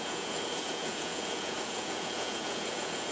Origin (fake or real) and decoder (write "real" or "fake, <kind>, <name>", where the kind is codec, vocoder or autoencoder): fake, vocoder, Vocos